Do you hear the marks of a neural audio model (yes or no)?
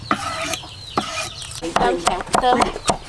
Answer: no